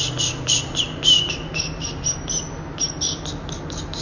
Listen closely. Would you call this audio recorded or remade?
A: recorded